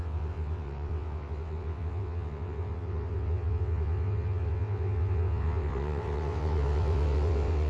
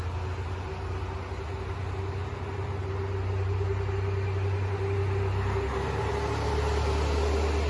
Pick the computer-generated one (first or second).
first